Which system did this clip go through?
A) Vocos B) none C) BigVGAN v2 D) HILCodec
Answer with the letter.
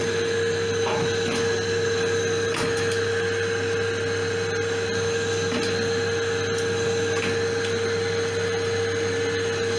B